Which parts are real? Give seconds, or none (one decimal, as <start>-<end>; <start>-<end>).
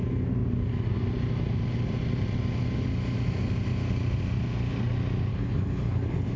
0.0-5.3